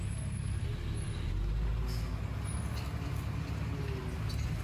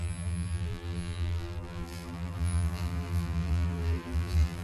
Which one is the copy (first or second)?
second